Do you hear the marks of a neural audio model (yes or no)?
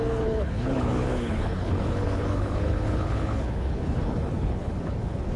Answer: yes